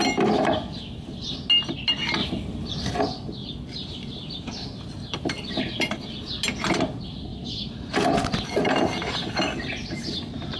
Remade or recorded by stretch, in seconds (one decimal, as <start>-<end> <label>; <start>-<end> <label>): 0.0-2.2 recorded; 2.2-3.0 remade; 3.0-3.4 recorded; 3.4-5.9 remade; 5.9-7.3 recorded; 7.3-10.6 remade